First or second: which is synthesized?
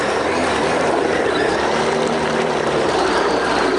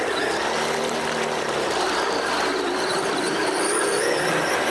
first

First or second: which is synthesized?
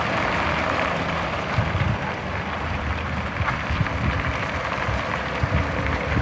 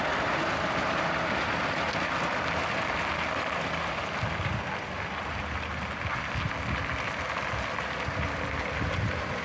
first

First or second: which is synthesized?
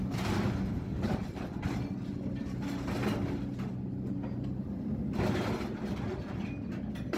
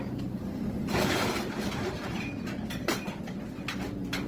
second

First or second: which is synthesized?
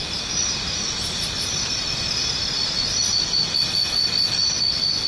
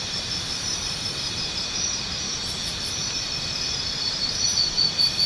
second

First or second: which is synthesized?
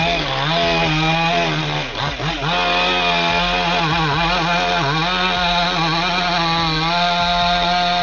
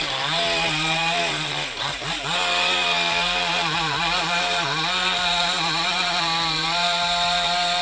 second